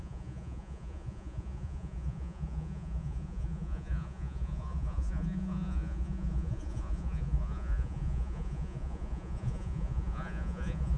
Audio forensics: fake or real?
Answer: fake